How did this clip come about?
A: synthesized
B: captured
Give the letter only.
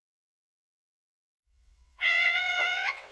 A